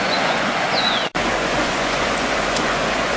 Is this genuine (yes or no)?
no